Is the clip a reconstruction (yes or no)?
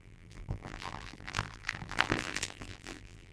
yes